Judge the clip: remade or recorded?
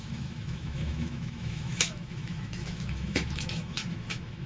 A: remade